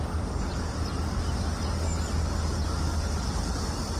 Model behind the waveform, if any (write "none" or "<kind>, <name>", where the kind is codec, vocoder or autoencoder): none